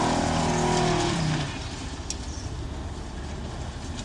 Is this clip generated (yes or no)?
no